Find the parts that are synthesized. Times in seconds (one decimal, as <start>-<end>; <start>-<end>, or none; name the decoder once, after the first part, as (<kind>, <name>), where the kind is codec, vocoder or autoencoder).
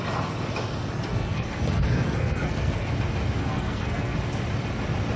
1.1-2.9 (codec, SNAC); 3.4-4.2